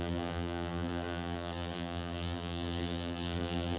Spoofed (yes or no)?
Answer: yes